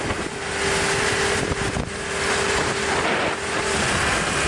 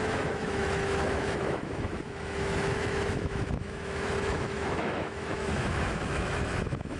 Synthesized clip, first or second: second